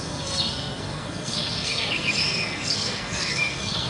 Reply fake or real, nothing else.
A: fake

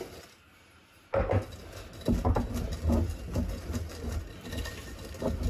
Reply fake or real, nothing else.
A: real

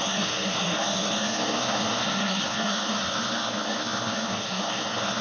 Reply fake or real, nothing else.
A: fake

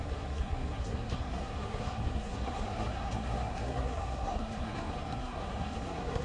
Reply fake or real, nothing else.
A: fake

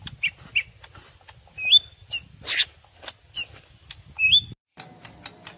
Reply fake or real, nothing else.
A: real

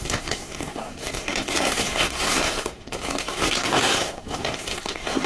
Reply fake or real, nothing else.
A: fake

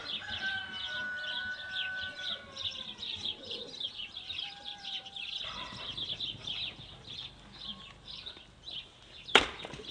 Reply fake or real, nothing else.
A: real